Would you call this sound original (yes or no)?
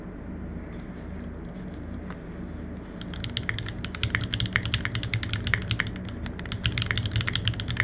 yes